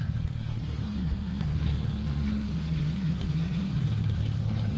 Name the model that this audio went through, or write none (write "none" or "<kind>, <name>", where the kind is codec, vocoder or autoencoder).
codec, SNAC